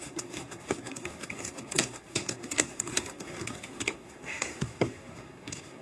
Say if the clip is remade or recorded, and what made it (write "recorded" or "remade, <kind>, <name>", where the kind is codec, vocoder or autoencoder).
remade, codec, SNAC